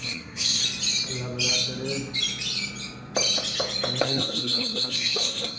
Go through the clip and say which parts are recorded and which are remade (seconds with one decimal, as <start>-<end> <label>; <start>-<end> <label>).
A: 0.0-0.6 remade; 0.6-4.0 recorded; 4.0-5.6 remade